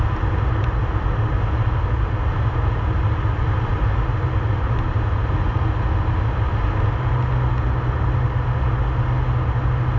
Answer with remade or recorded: recorded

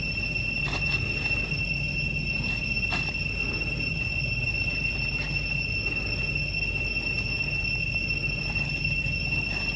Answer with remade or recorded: recorded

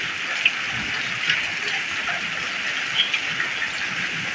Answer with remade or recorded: recorded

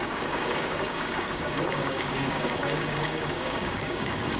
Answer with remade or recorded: remade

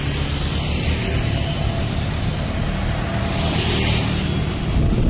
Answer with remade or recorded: recorded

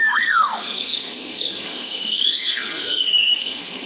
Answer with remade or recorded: remade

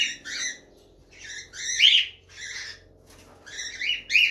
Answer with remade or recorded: recorded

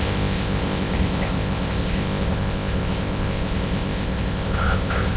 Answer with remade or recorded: remade